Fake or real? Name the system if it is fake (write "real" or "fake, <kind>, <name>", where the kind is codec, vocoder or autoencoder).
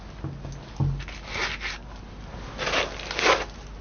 real